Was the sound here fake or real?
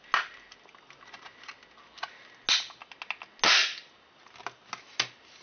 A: real